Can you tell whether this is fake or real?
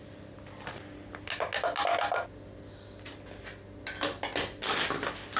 real